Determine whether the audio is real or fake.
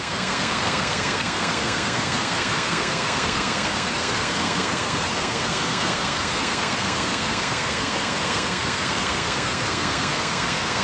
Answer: fake